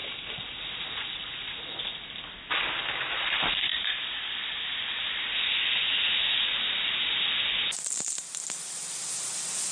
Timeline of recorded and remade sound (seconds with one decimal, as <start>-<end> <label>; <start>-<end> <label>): 0.0-9.7 recorded